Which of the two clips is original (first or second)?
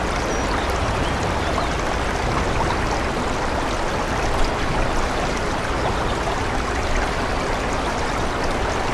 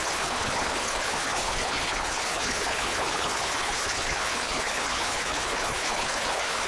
first